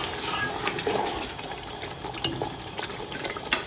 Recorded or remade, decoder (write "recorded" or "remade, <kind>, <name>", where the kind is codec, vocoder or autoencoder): recorded